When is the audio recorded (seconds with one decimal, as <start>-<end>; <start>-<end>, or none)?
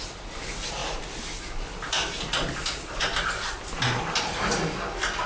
0.0-5.3